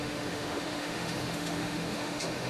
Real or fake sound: fake